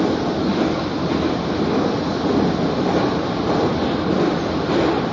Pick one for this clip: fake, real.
real